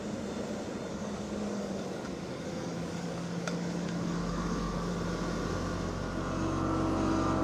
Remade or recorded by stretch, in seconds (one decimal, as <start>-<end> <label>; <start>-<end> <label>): 0.0-0.9 recorded; 0.9-4.9 remade; 4.9-7.4 recorded